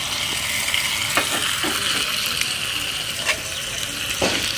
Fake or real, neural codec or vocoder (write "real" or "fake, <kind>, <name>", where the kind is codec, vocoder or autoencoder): real